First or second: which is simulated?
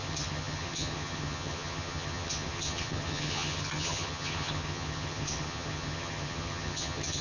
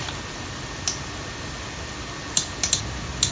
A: first